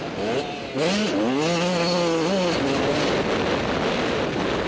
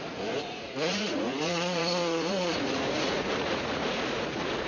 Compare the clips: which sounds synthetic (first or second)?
second